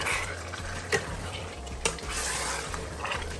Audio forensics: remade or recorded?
remade